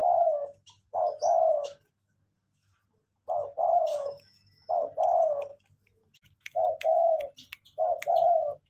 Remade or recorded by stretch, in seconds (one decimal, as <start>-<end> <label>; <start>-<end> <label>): 0.0-2.7 remade; 2.7-3.9 recorded; 3.9-4.7 remade; 4.7-5.5 recorded; 5.5-7.2 remade; 7.2-8.7 recorded